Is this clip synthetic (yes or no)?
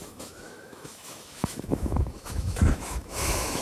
yes